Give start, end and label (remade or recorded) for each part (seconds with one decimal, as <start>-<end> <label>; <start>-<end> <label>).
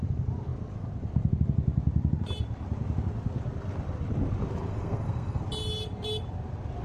0.0-4.7 recorded; 4.7-5.4 remade; 5.4-6.8 recorded